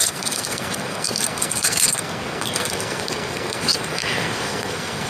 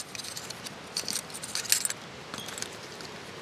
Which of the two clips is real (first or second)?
second